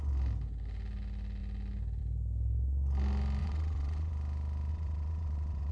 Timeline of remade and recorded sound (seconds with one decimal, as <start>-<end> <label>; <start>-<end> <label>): 0.0-3.4 recorded; 3.4-4.1 remade; 4.1-4.7 recorded; 4.7-5.7 remade